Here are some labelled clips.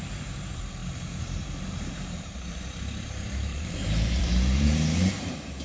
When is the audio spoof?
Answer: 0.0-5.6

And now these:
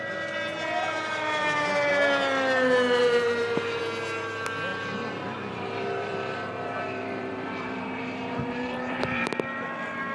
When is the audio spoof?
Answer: 3.0-3.8; 4.7-9.3

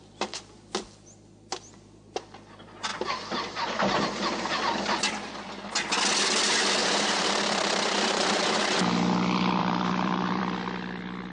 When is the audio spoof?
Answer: 2.9-4.0; 6.8-8.6; 9.6-10.4

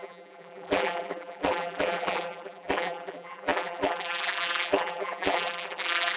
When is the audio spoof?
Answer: 0.0-6.2

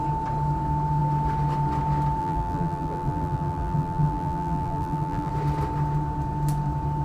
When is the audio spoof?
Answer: 2.2-5.3

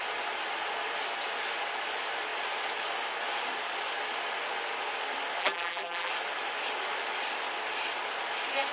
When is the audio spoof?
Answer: 5.4-6.1

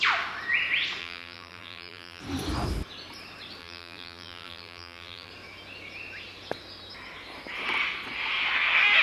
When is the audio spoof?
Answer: 1.0-2.2; 3.6-5.3